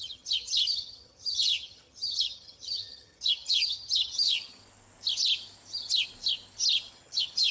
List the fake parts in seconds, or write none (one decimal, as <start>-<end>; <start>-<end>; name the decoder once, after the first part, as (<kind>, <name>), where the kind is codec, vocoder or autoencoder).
0.0-4.6 (vocoder, HiFi-GAN); 6.9-7.5